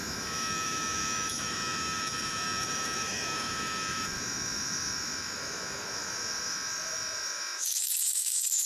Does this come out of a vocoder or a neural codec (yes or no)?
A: yes